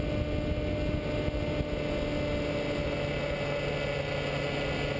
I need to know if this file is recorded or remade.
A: recorded